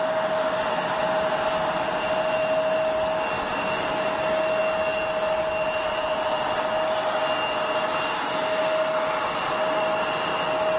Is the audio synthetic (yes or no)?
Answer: no